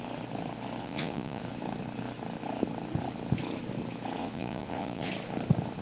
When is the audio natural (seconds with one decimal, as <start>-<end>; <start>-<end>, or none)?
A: 0.0-0.8; 1.4-4.2; 5.1-5.8